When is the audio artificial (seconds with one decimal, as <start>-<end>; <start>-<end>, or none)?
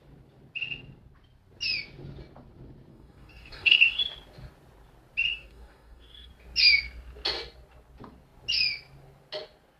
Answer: 2.9-4.0; 5.3-6.3